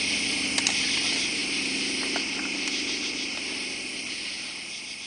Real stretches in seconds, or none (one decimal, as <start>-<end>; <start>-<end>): 0.0-5.1